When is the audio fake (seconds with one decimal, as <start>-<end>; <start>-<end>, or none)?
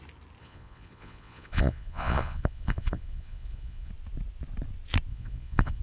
0.4-3.9; 5.1-5.8